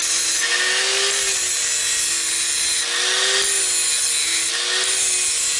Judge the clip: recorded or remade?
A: recorded